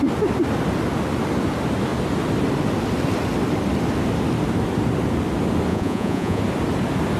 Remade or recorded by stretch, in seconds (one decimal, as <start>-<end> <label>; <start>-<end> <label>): 0.0-5.7 recorded; 5.7-6.4 remade; 6.4-7.2 recorded